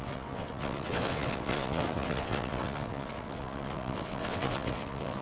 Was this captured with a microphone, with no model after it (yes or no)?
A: no